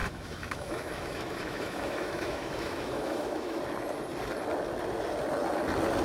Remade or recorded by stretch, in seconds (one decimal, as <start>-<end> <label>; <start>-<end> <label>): 0.0-3.6 remade; 3.6-6.0 recorded